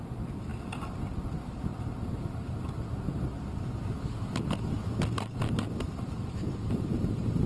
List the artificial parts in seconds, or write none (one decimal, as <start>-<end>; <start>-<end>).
none